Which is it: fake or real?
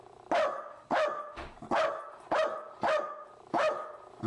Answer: real